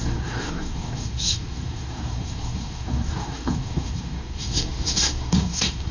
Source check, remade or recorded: remade